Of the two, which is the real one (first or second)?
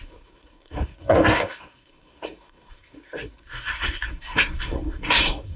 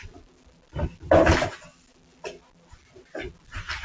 second